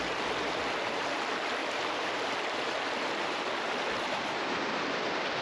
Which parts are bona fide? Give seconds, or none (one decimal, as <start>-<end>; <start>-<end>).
0.0-5.4